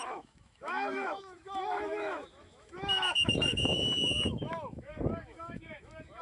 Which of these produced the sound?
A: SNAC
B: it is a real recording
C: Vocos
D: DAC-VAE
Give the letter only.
D